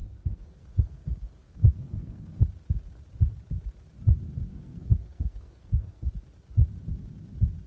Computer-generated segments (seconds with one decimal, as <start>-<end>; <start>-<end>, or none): 0.0-2.4; 4.5-6.1